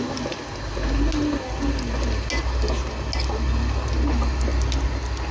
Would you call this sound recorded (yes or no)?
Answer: yes